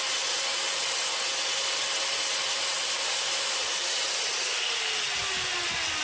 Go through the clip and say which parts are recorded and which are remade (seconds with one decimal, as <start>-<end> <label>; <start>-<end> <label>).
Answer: 0.0-6.0 recorded